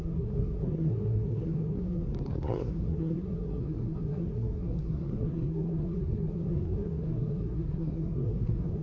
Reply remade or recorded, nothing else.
remade